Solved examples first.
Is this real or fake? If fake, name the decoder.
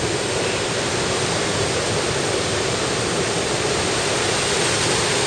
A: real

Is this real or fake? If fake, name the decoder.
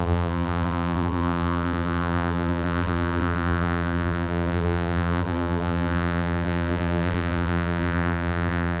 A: fake, vocoder, BigVGAN v2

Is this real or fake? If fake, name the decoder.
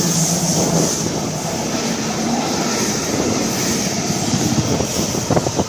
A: real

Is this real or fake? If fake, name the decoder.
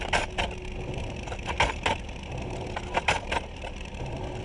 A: real